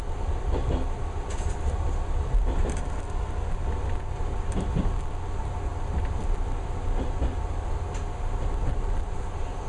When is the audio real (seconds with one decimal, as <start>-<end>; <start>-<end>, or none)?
0.0-9.7